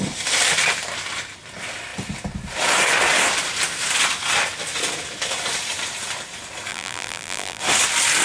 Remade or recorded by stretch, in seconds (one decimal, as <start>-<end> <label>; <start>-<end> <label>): 0.0-6.7 recorded; 6.7-7.6 remade; 7.6-8.2 recorded